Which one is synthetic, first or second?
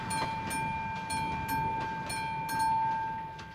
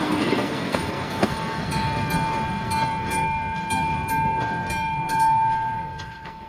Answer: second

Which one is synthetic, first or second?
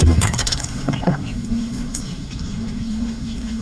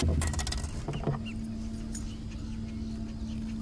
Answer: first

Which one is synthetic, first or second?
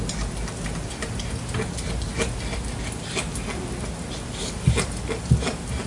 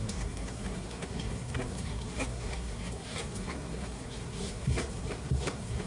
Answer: second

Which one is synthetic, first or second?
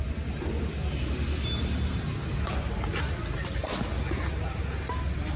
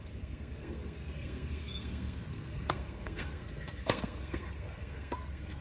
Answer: second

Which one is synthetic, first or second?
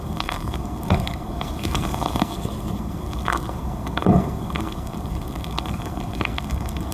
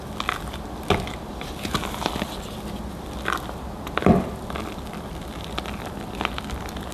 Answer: first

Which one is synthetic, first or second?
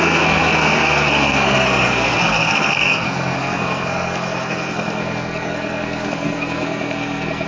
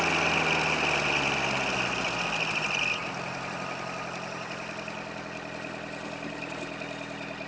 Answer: first